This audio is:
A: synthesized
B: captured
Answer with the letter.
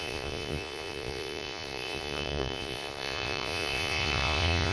A